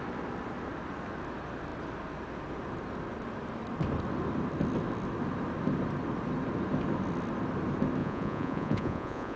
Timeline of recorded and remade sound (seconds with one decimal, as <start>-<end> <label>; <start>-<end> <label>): 0.0-8.0 recorded; 8.0-9.4 remade